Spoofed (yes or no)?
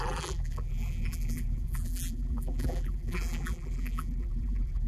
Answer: yes